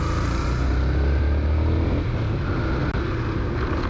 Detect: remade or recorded recorded